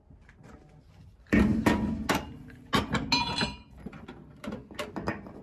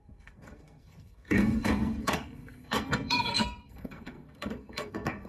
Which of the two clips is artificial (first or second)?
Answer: second